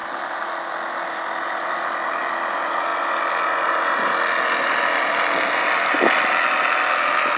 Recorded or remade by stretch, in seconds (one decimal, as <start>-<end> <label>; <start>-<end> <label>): 0.0-7.4 recorded